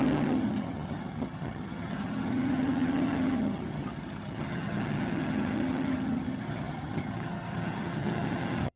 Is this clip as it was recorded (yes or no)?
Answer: no